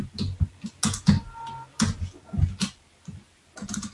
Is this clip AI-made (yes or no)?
no